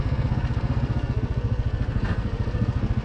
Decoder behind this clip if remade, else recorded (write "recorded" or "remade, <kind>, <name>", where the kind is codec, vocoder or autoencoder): remade, codec, SNAC